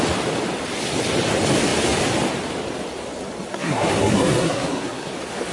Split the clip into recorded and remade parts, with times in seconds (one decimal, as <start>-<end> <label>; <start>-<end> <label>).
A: 0.0-3.5 recorded; 3.5-5.1 remade; 5.1-5.5 recorded